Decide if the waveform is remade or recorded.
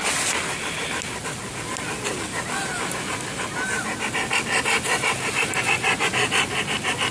recorded